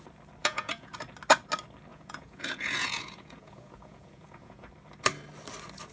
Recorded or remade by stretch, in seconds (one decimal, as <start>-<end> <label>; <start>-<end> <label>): 0.0-0.4 recorded; 0.4-1.0 remade; 1.0-1.9 recorded; 1.9-4.7 remade; 4.7-5.9 recorded